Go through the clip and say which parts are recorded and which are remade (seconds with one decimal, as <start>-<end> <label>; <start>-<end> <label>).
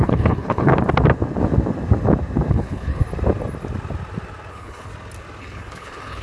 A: 0.0-0.7 remade; 0.7-2.5 recorded; 2.5-3.0 remade; 3.0-4.5 recorded; 4.5-4.9 remade; 4.9-5.4 recorded; 5.4-6.2 remade